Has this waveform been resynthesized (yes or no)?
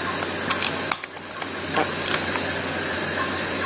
no